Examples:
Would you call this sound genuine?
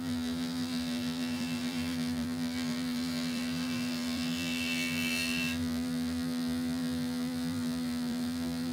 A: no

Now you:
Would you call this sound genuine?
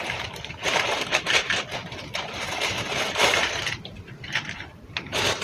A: no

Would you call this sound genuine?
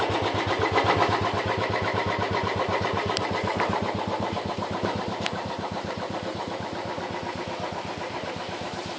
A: no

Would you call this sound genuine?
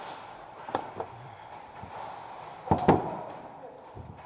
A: no